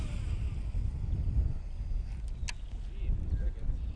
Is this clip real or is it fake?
real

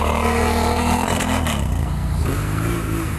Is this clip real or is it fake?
fake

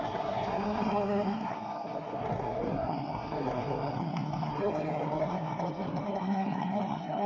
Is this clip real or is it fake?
fake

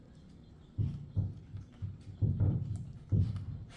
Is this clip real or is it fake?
real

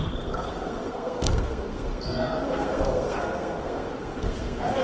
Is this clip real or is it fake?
fake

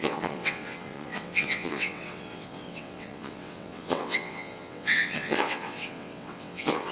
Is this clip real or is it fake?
fake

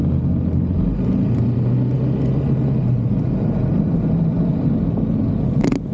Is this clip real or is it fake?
real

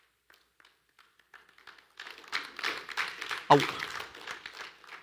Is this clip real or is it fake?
real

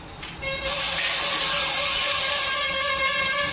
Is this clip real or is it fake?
real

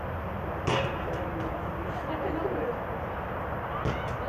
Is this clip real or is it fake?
real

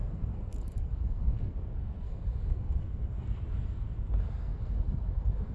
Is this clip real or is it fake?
fake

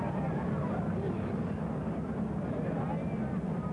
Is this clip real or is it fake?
real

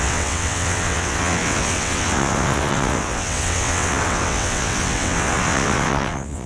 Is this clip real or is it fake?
fake